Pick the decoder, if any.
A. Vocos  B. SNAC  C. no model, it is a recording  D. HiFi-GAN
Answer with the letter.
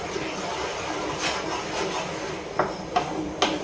C